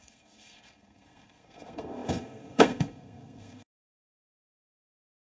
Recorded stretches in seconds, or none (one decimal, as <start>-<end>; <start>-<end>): none